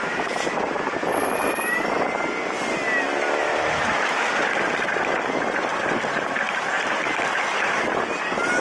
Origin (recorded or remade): recorded